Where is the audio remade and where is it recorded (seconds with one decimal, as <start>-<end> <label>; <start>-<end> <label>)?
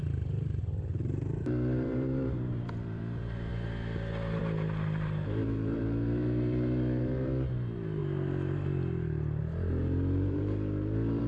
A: 0.0-3.5 remade; 3.5-4.4 recorded; 4.4-8.0 remade; 8.0-9.4 recorded; 9.4-11.3 remade